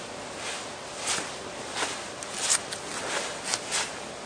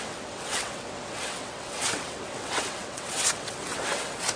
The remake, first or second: second